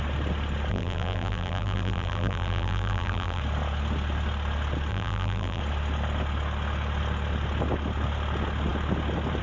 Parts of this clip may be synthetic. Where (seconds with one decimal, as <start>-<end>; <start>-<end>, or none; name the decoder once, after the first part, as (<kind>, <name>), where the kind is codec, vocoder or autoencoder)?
0.7-3.4 (vocoder, BigVGAN v2); 4.9-5.6